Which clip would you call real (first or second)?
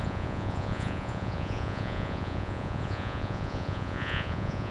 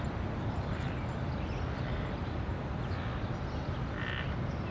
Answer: second